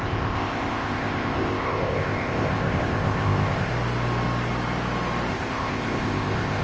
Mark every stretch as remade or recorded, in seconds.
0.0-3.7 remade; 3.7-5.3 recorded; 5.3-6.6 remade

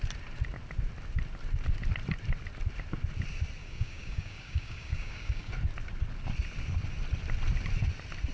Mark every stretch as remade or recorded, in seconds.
0.0-3.6 recorded; 3.6-5.5 remade; 5.5-8.3 recorded

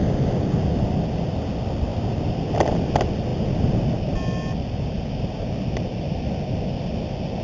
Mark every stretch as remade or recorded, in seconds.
0.0-7.4 recorded

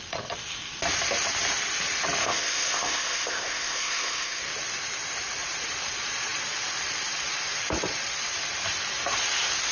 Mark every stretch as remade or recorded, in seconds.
0.0-2.2 recorded; 2.2-4.4 remade; 4.4-9.7 recorded

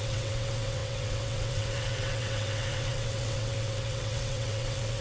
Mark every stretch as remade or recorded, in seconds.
0.0-5.0 remade

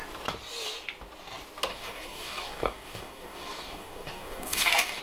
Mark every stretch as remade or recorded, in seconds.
0.0-1.7 recorded; 1.7-5.0 remade